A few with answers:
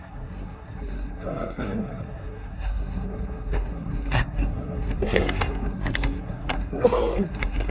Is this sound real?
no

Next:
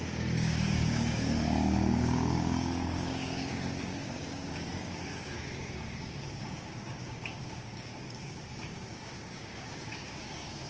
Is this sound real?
no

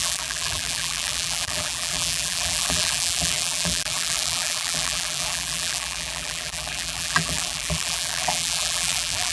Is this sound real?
no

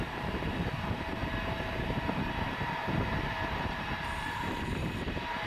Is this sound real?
no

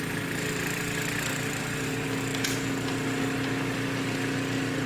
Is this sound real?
yes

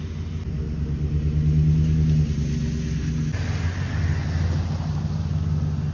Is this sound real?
yes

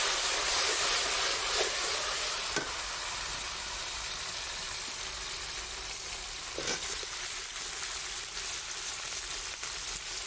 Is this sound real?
yes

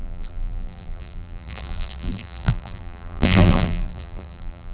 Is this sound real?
no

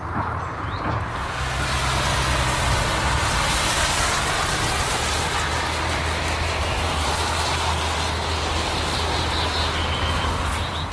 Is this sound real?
yes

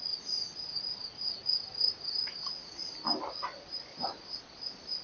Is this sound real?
yes